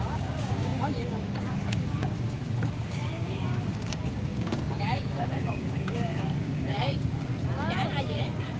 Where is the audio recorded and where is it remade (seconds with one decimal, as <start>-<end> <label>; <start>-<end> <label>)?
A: 0.0-7.3 remade; 7.3-8.0 recorded; 8.0-8.6 remade